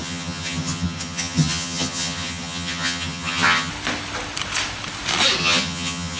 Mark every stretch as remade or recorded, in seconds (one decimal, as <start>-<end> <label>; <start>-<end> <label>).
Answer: 0.0-3.7 remade; 3.7-5.4 recorded; 5.4-6.2 remade